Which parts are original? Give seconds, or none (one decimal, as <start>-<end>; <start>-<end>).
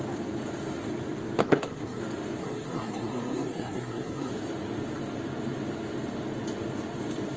0.0-1.4; 2.0-2.4; 4.3-7.4